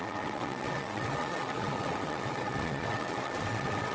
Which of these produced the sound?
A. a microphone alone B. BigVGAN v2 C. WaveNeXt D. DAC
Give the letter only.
C